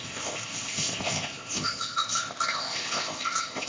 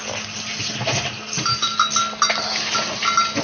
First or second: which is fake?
first